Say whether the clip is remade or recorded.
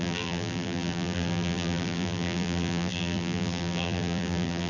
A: remade